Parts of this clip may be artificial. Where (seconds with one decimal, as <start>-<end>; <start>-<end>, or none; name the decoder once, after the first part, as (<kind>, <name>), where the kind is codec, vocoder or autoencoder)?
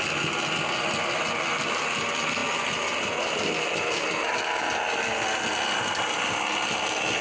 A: none